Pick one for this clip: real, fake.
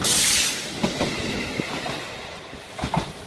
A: real